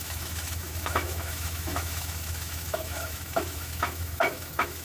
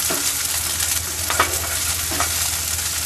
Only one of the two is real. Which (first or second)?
second